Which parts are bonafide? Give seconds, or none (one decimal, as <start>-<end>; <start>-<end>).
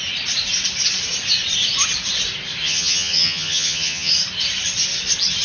0.0-2.6; 4.1-5.4